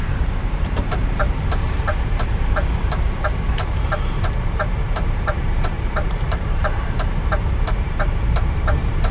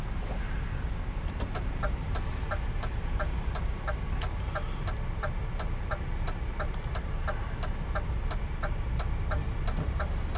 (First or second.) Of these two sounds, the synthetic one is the first